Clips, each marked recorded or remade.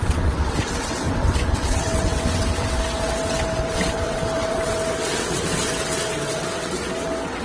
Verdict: remade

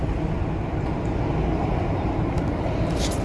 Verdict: recorded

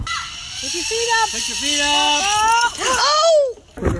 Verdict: recorded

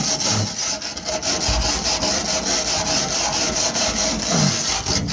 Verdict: recorded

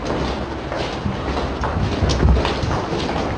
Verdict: recorded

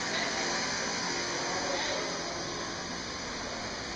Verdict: recorded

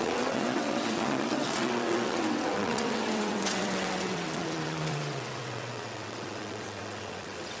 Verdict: remade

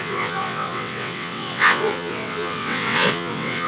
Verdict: remade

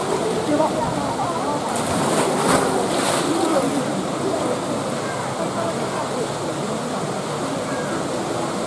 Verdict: recorded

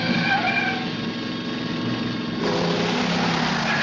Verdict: recorded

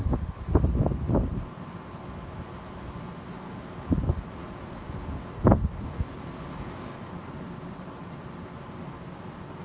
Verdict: recorded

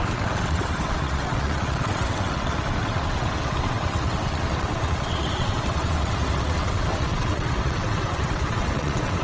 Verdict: remade